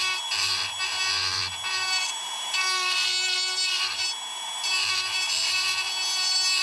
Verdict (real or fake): fake